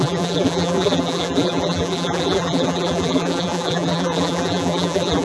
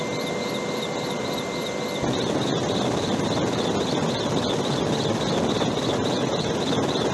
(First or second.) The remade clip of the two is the first